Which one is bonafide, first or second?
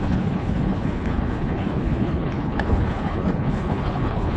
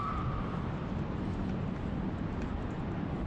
second